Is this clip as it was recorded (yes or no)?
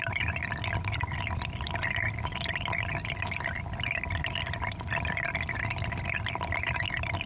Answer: yes